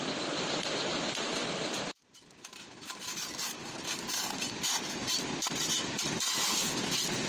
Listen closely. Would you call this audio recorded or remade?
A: remade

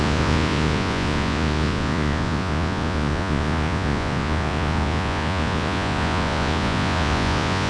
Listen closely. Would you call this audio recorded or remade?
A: remade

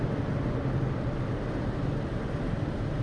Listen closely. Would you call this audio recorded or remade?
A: recorded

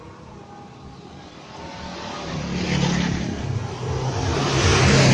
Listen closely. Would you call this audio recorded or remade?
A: recorded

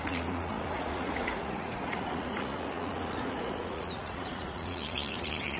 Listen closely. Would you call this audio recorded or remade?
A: remade